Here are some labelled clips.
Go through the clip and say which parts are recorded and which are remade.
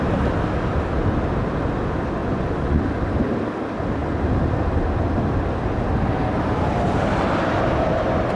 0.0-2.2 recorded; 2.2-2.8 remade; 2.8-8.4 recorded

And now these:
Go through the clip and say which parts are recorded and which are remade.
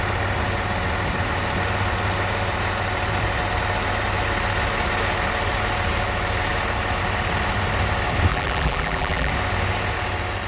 0.0-8.3 recorded; 8.3-9.3 remade; 9.3-10.5 recorded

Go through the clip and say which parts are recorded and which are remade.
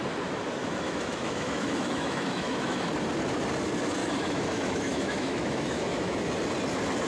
0.0-0.6 recorded; 0.6-2.9 remade; 2.9-4.0 recorded; 4.0-6.3 remade; 6.3-7.1 recorded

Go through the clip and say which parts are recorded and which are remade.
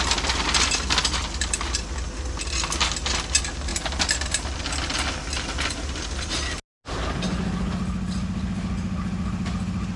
0.0-10.0 recorded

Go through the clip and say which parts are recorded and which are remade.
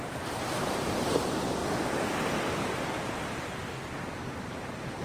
0.0-1.6 remade; 1.6-2.6 recorded; 2.6-3.6 remade; 3.6-4.2 recorded; 4.2-5.0 remade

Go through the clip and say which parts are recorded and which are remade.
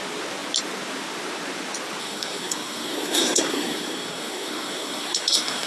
0.0-2.0 recorded; 2.0-5.7 remade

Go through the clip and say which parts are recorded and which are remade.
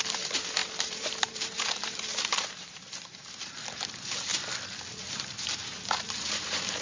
0.0-4.3 remade; 4.3-5.0 recorded; 5.0-6.8 remade